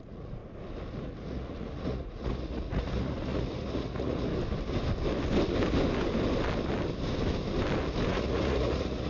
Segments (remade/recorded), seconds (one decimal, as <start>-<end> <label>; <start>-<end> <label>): 0.0-0.4 remade; 0.4-1.0 recorded; 1.0-4.3 remade; 4.3-8.1 recorded; 8.1-9.1 remade